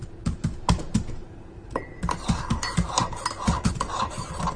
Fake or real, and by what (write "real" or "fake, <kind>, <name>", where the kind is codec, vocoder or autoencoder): real